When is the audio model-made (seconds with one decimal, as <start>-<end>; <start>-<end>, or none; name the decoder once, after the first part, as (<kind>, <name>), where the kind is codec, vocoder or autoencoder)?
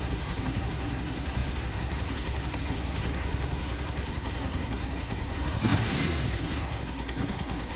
0.0-7.8 (codec, SNAC)